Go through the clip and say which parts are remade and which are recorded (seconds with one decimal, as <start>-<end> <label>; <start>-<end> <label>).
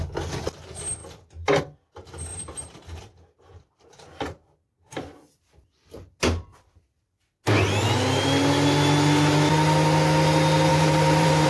0.0-2.3 recorded; 2.3-6.0 remade; 6.0-10.7 recorded; 10.7-11.5 remade